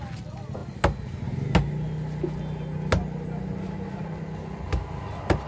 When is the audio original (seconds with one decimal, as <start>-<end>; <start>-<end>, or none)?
0.0-5.5